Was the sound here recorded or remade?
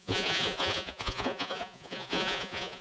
remade